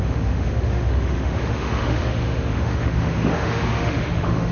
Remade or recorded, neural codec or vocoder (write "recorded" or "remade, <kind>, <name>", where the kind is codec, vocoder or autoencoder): remade, autoencoder, DAC-VAE